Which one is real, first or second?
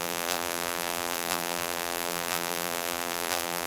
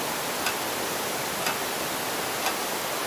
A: second